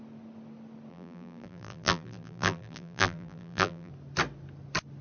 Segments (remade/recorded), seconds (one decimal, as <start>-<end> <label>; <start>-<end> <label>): 0.0-0.9 recorded; 0.9-3.9 remade; 3.9-5.0 recorded